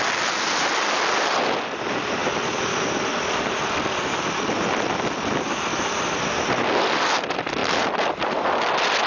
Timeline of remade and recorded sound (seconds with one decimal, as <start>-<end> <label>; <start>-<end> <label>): 0.0-9.1 recorded